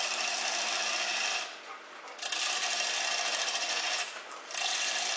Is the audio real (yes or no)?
yes